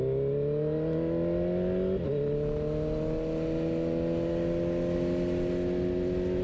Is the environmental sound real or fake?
real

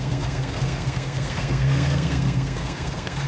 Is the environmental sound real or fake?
fake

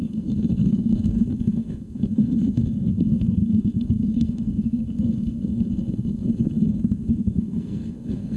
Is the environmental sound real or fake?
fake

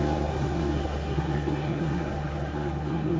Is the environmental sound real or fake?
fake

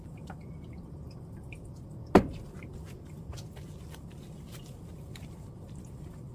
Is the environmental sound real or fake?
real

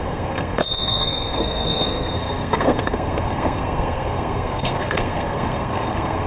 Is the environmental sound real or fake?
fake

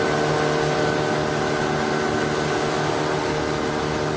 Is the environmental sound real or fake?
real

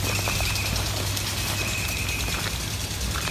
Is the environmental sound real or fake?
real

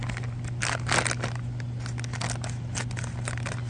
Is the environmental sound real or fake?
real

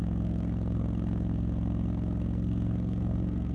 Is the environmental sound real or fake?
fake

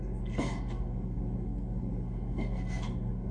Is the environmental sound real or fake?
fake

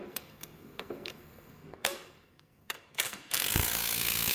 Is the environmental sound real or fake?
fake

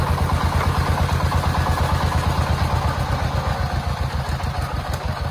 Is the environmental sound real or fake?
real